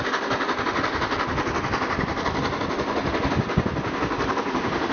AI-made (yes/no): no